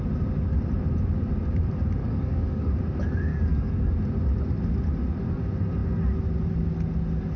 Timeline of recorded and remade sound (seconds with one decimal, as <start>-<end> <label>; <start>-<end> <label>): 0.0-2.0 recorded; 2.0-2.7 remade; 2.7-3.3 recorded; 3.3-3.9 remade; 3.9-7.4 recorded